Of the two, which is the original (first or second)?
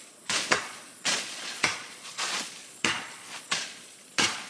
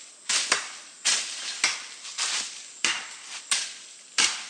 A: second